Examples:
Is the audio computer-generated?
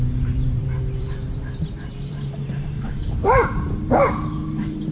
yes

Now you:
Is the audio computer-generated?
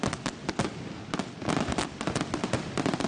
no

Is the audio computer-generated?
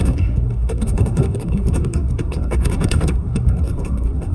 yes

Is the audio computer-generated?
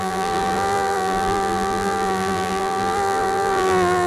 yes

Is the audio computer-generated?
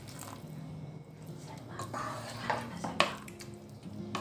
no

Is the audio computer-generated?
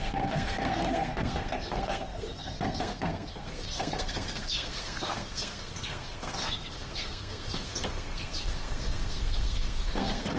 yes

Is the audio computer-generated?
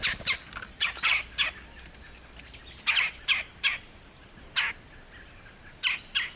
no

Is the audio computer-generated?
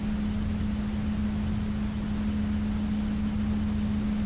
no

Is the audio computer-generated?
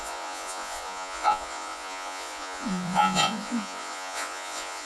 yes